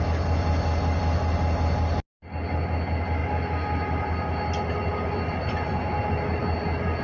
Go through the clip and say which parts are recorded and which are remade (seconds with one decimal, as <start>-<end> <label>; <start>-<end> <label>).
0.0-7.0 recorded